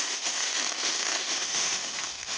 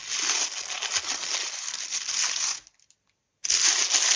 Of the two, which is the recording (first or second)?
second